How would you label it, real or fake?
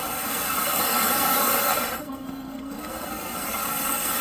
fake